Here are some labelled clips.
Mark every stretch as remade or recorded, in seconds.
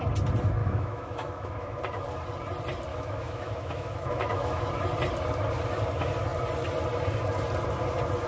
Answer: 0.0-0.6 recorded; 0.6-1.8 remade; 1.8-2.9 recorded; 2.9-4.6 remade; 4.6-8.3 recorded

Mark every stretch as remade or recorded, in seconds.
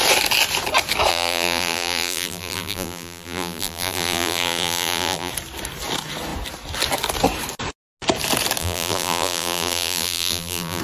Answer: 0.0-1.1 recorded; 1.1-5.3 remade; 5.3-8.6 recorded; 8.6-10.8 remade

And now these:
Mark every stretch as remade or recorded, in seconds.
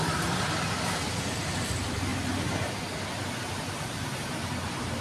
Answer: 0.0-5.0 recorded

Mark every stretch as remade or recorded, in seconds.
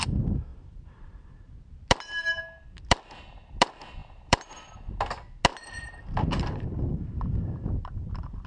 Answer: 0.0-0.5 recorded; 0.5-1.3 remade; 1.3-4.0 recorded; 4.0-4.5 remade; 4.5-8.5 recorded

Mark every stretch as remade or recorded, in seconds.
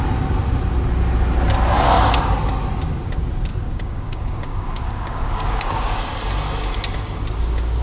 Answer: 0.0-3.5 recorded; 3.5-6.0 remade; 6.0-7.8 recorded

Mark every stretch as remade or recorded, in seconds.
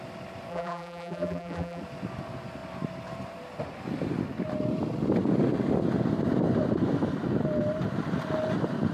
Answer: 0.0-0.5 recorded; 0.5-1.8 remade; 1.8-8.9 recorded